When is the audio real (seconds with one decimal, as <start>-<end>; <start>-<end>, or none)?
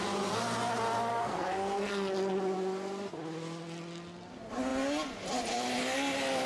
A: 0.0-1.1; 2.1-6.5